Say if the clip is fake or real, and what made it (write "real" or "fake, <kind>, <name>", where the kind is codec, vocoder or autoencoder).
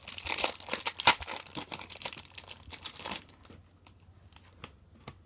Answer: real